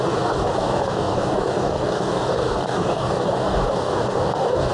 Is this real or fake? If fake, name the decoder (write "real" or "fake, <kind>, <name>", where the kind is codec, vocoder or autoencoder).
fake, codec, DAC